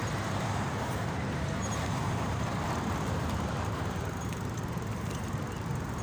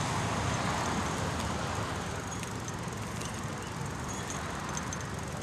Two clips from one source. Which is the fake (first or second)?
first